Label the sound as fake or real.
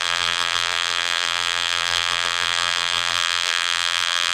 fake